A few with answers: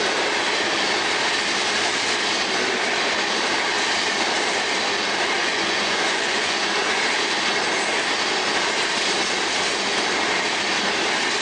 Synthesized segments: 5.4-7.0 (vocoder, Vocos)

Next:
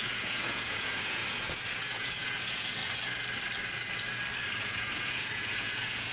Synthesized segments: 0.0-2.8 (vocoder, Vocos); 4.6-6.1

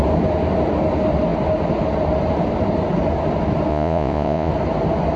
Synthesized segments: 3.7-4.5 (vocoder, Vocos)

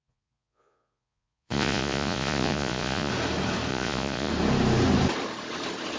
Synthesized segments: 0.0-3.1 (vocoder, Vocos); 3.7-4.3

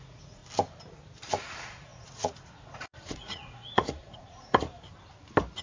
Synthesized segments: 0.0-0.4 (vocoder, Vocos); 1.3-4.7